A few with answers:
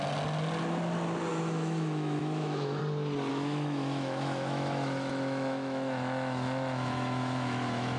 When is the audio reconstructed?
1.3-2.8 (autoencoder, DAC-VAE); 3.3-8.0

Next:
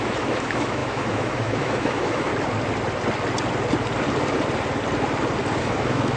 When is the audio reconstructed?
0.0-2.3 (autoencoder, DAC-VAE); 5.6-6.2

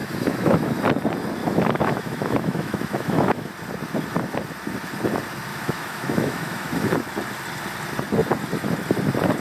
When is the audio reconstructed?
0.0-0.8 (autoencoder, DAC-VAE); 1.4-3.5; 5.5-6.9

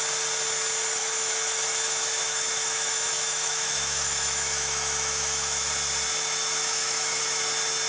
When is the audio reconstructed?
1.0-5.7 (autoencoder, DAC-VAE); 6.6-7.2

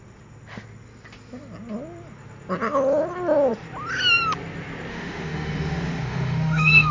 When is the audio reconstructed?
4.9-6.9 (autoencoder, DAC-VAE)

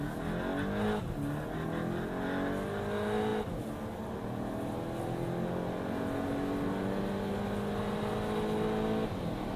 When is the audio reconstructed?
none

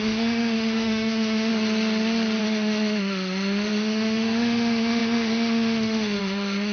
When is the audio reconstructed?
0.0-1.5 (autoencoder, DAC-VAE); 2.4-6.7